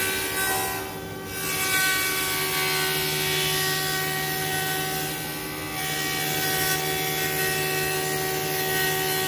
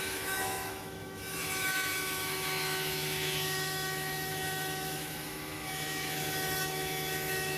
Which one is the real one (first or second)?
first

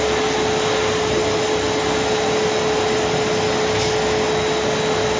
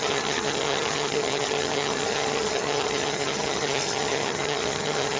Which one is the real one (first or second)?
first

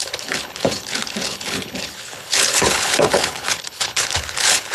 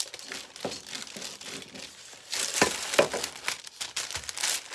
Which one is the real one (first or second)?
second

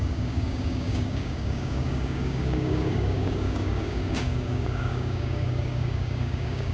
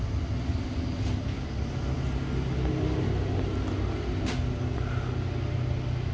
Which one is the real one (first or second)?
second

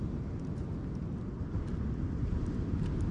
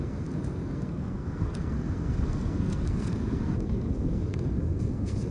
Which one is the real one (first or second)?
first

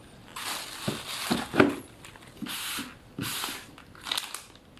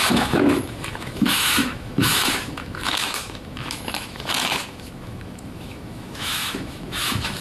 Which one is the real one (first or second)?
first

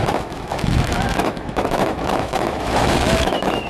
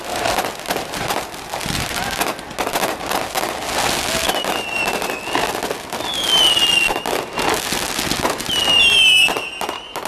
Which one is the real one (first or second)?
second